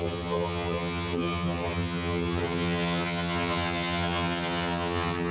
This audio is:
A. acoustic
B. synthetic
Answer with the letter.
B